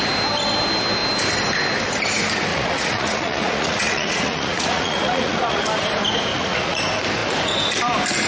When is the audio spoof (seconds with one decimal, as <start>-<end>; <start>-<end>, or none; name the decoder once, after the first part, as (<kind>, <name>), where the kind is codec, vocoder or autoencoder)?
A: 2.5-5.6 (vocoder, Vocos); 6.3-6.8